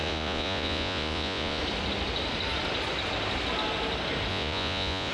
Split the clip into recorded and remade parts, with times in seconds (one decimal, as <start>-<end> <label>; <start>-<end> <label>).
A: 0.0-1.6 remade; 1.6-4.3 recorded; 4.3-5.1 remade

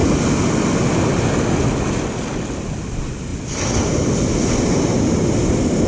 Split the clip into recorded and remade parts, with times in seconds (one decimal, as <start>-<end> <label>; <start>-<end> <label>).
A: 0.0-5.9 recorded

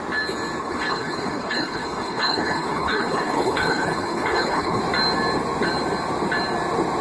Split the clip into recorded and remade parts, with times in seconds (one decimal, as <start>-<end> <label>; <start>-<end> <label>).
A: 0.0-0.6 recorded; 0.6-4.8 remade; 4.8-7.0 recorded

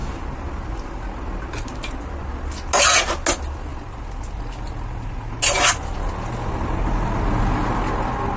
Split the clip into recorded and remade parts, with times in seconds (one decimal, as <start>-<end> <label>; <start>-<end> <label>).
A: 0.0-8.4 recorded

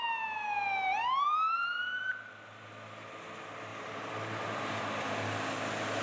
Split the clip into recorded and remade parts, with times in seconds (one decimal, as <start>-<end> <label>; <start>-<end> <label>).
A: 0.0-1.0 recorded; 1.0-2.3 remade; 2.3-3.7 recorded; 3.7-4.8 remade; 4.8-6.0 recorded

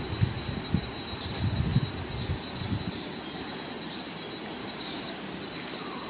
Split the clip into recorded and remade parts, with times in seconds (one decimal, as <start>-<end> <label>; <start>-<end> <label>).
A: 0.0-4.6 recorded; 4.6-5.3 remade; 5.3-6.1 recorded